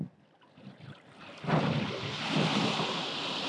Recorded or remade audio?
recorded